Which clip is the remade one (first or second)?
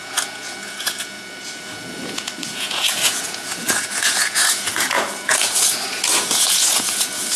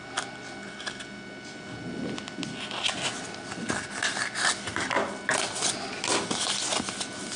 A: first